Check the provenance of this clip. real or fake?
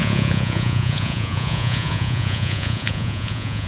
fake